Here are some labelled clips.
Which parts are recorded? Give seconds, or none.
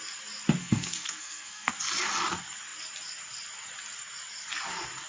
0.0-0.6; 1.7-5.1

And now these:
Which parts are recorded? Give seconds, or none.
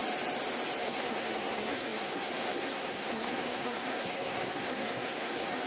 0.0-0.8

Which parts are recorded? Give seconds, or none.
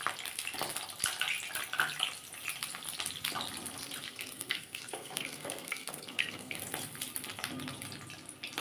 0.0-4.0; 6.6-8.6